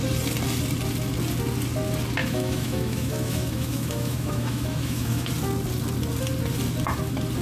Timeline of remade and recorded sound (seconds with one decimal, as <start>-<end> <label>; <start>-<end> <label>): 0.0-2.2 recorded; 2.2-5.3 remade; 5.3-7.4 recorded